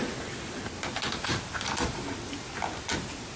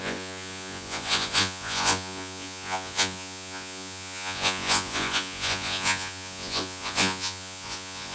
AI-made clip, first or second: second